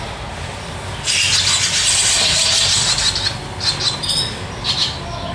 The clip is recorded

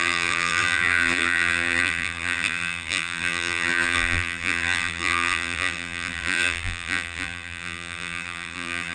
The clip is remade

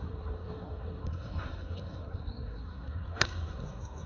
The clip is remade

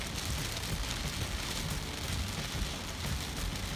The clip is recorded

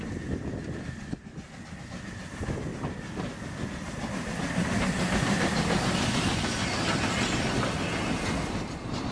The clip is recorded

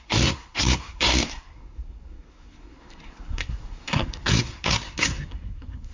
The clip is remade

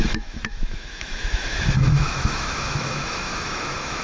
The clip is remade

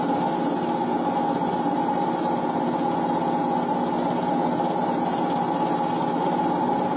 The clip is recorded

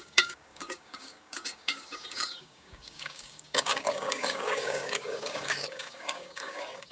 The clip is remade